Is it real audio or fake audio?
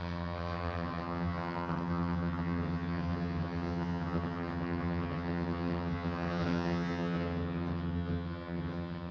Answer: fake